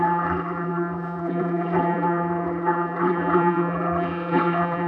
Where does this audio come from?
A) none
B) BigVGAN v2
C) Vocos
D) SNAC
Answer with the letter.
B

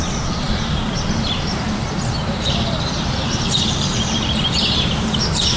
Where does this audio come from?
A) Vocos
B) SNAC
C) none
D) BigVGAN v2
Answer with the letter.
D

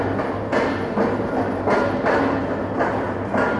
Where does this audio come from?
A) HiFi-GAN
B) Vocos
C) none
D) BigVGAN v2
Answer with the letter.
C